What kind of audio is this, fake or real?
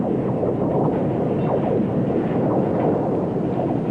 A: real